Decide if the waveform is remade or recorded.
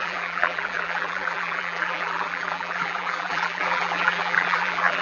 remade